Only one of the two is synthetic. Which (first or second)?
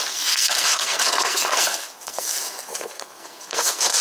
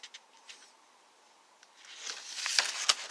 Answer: first